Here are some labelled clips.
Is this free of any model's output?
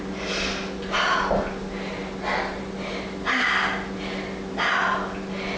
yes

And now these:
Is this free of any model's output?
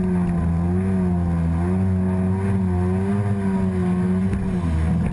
yes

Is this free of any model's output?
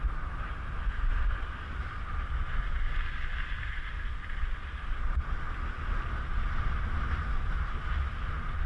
yes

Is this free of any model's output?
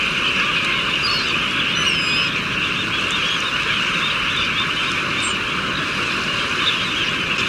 yes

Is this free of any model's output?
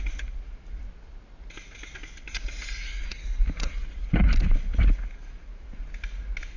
yes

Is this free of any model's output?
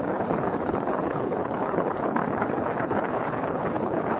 no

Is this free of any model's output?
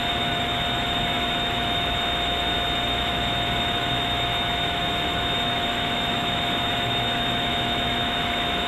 no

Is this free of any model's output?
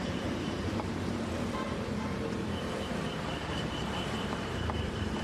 no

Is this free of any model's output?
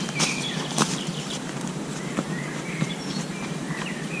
no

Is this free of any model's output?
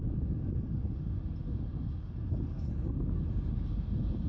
yes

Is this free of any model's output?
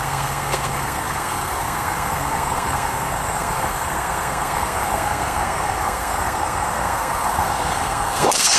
no